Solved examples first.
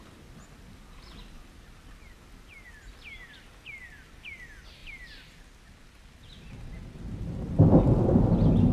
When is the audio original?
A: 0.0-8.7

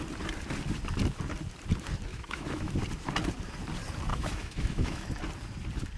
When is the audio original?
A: 0.0-2.1; 2.7-4.1; 5.2-6.0

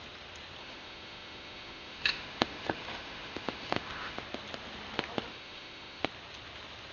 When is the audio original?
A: 0.0-0.6; 4.2-5.3; 6.0-6.9

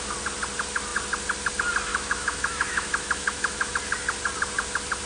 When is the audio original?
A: 0.0-1.9; 3.7-5.1

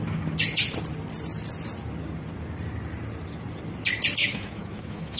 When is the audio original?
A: 0.0-4.2

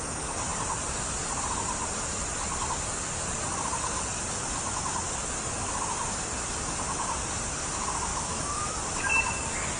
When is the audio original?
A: 0.0-8.1; 8.8-9.8

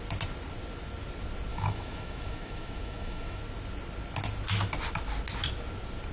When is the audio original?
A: 0.0-1.5; 3.4-6.1

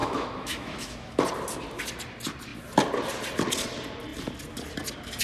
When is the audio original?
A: 1.2-5.2